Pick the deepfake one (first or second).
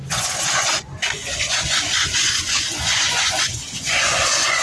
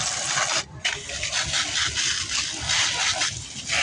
first